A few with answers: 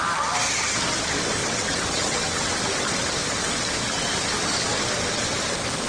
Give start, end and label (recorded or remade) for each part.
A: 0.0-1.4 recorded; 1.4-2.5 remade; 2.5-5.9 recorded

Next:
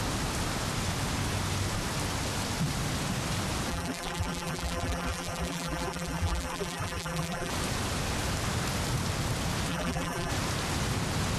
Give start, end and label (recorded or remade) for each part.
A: 0.0-3.7 recorded; 3.7-7.5 remade; 7.5-9.7 recorded; 9.7-10.3 remade; 10.3-11.4 recorded

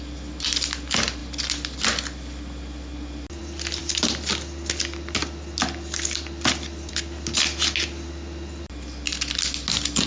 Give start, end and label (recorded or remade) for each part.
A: 0.0-10.1 recorded

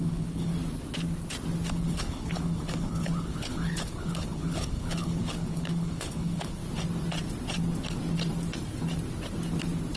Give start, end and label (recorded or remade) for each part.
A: 0.0-0.5 remade; 0.5-1.7 recorded; 1.7-6.6 remade; 6.6-10.0 recorded

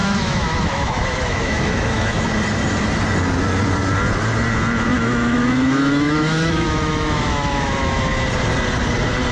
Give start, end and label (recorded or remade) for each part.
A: 0.0-2.3 remade; 2.3-4.9 recorded; 4.9-8.0 remade; 8.0-9.3 recorded

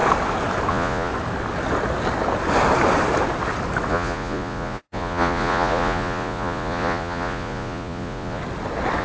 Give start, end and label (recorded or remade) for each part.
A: 0.0-0.7 recorded; 0.7-1.1 remade; 1.1-3.9 recorded; 3.9-8.4 remade; 8.4-9.0 recorded

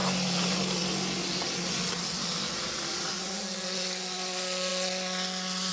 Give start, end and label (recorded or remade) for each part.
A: 0.0-5.7 recorded

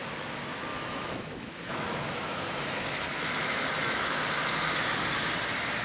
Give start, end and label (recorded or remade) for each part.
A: 0.0-0.7 recorded; 0.7-4.2 remade; 4.2-5.8 recorded